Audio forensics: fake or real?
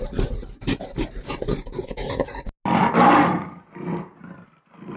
real